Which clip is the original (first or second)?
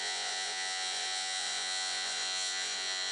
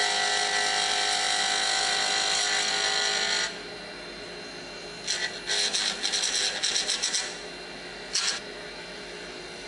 second